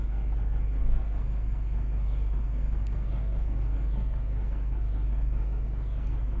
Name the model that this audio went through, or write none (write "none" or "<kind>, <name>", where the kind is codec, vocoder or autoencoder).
codec, SNAC